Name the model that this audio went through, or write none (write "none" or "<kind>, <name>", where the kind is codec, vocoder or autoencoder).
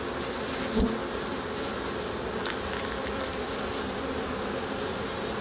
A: none